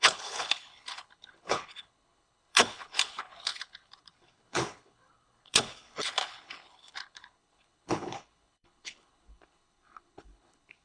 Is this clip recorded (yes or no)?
no